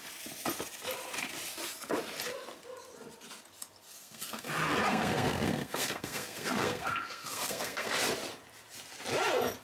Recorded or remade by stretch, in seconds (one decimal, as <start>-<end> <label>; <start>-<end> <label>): 0.0-3.9 recorded; 3.9-4.5 remade; 4.5-4.9 recorded; 4.9-7.9 remade; 7.9-9.6 recorded